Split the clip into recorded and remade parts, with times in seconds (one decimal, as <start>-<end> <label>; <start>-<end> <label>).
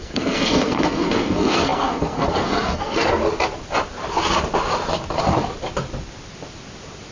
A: 0.0-3.2 remade; 3.2-7.1 recorded